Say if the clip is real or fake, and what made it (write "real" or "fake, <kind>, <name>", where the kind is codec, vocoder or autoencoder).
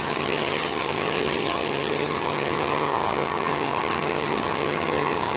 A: fake, vocoder, HiFi-GAN